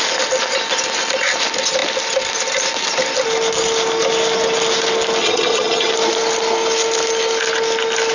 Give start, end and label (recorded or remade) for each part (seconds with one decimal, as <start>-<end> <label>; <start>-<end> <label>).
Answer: 0.0-5.2 recorded; 5.2-5.9 remade; 5.9-8.1 recorded